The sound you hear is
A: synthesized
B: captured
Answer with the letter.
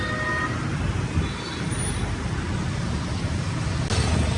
B